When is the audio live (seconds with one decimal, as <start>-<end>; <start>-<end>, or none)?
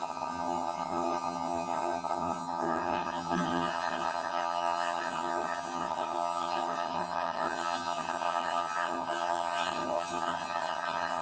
none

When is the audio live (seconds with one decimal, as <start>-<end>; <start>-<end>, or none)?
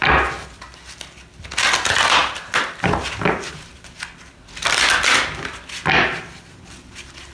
0.0-7.3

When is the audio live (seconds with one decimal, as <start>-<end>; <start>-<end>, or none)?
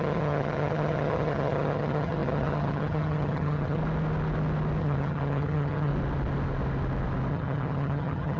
3.8-4.8; 5.9-7.3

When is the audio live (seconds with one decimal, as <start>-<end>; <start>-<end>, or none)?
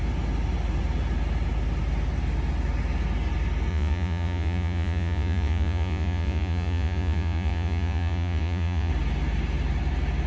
0.0-3.7; 8.9-10.3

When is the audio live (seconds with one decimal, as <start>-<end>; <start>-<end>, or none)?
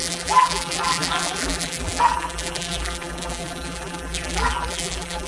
none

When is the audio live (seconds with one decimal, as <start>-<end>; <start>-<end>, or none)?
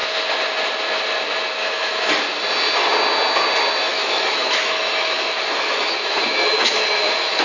0.0-1.6; 2.1-3.9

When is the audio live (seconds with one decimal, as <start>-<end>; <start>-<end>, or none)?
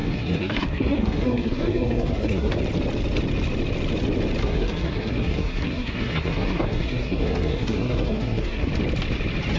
2.5-4.4; 8.7-9.6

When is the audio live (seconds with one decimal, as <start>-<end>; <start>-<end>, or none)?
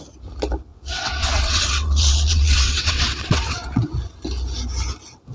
0.0-0.7; 3.9-5.3